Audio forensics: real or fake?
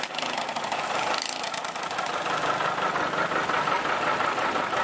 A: real